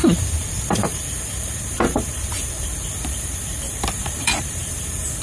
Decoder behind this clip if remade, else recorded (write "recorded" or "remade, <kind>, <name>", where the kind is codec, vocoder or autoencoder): remade, vocoder, BigVGAN v2